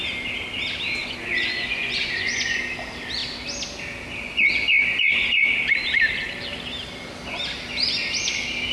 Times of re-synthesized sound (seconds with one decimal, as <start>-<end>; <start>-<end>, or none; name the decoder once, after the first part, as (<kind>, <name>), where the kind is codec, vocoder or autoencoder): 1.0-2.6 (vocoder, Vocos); 4.8-5.5